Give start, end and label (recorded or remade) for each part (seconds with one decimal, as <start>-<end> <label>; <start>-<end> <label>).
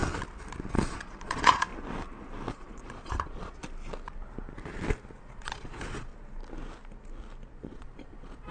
0.0-0.7 recorded; 0.7-1.7 remade; 1.7-2.5 recorded; 2.5-3.6 remade; 3.6-5.2 recorded; 5.2-6.1 remade; 6.1-7.6 recorded; 7.6-8.5 remade